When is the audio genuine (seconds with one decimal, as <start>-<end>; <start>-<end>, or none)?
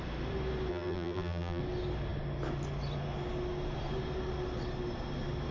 0.0-0.7; 1.6-5.5